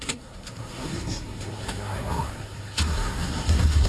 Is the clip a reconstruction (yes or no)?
yes